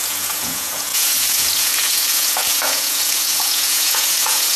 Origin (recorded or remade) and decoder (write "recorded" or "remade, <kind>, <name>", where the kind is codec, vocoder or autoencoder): remade, vocoder, Vocos